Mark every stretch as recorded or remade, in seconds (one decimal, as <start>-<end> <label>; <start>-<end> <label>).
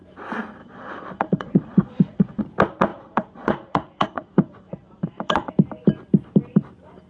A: 0.0-0.6 recorded; 0.6-2.4 remade; 2.4-2.9 recorded; 2.9-5.5 remade; 5.5-7.1 recorded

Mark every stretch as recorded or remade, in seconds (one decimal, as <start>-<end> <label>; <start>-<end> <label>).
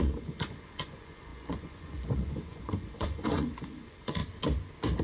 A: 0.0-4.2 remade; 4.2-5.0 recorded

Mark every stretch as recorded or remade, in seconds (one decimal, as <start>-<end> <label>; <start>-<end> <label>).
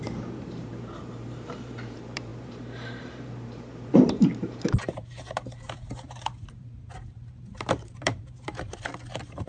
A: 0.0-9.5 remade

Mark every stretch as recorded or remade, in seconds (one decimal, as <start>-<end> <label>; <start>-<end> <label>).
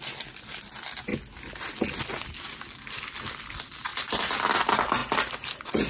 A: 0.0-5.9 recorded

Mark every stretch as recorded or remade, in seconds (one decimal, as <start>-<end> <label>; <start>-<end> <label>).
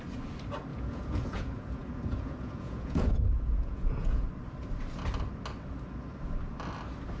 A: 0.0-0.7 recorded; 0.7-4.3 remade; 4.3-7.2 recorded